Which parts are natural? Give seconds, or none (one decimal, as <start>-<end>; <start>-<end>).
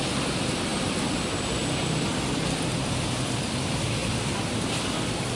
0.0-5.3